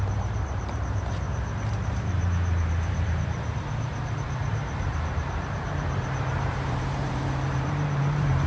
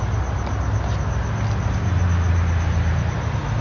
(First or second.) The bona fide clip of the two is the second